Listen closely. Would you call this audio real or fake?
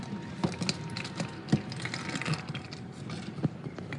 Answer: real